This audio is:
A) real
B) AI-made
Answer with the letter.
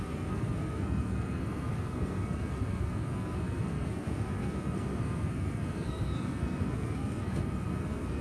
B